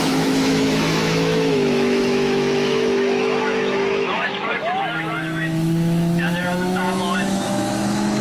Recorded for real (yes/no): no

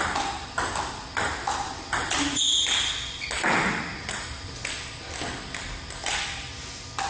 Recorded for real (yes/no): yes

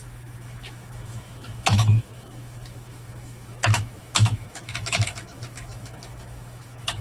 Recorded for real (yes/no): no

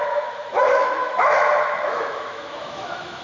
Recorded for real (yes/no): no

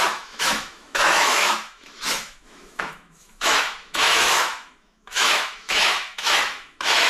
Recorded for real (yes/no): no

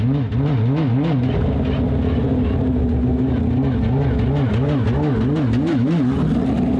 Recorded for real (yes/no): yes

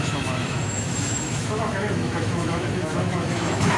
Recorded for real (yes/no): no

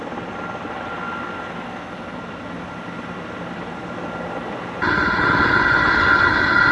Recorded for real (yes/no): yes